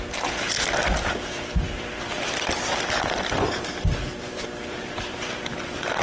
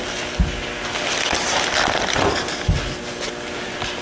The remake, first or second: first